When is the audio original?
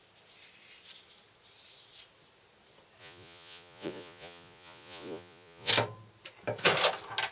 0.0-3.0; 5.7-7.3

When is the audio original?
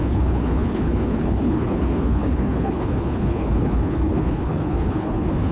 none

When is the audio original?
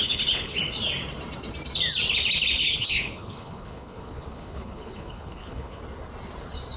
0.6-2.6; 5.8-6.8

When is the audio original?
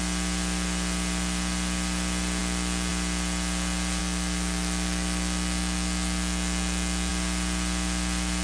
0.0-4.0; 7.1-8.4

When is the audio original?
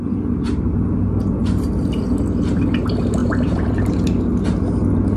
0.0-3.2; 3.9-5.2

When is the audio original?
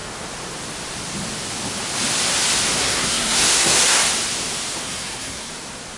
0.0-2.8; 4.0-4.8; 5.5-6.0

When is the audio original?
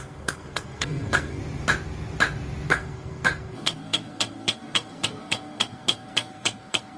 1.4-2.7